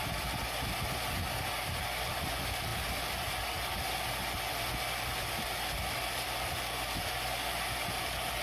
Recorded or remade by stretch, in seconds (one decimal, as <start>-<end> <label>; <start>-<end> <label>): 0.0-8.4 recorded